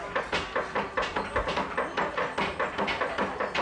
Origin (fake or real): real